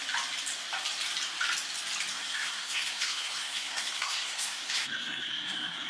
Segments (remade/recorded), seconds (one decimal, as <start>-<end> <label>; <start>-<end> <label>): 0.0-2.1 recorded; 2.1-5.9 remade